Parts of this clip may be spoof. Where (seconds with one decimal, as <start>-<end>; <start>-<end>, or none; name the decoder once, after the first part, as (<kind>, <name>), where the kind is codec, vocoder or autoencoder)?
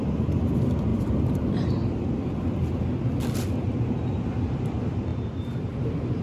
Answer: 0.9-2.8 (vocoder, BigVGAN v2); 5.1-5.8